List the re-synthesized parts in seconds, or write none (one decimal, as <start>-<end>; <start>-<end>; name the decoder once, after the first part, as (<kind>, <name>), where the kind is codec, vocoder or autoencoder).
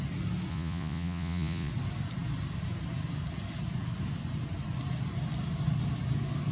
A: 0.5-1.7 (vocoder, Vocos)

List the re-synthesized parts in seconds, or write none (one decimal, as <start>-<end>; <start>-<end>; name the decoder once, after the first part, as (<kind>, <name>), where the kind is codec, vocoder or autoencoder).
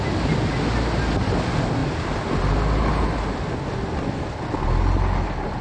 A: none